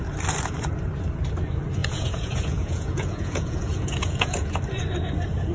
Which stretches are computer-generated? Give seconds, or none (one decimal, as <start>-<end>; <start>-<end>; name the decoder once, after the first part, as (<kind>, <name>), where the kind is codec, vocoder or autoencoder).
1.8-4.6 (vocoder, Vocos)